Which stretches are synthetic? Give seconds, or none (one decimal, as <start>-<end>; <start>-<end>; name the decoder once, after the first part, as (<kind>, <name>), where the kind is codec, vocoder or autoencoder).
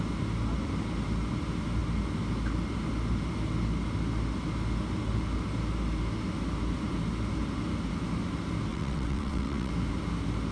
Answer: 8.7-9.7 (vocoder, WaveNeXt)